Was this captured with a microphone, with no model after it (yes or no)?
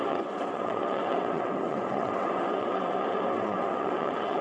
no